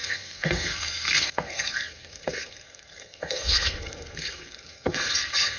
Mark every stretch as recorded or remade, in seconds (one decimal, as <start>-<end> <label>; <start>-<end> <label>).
0.0-5.6 remade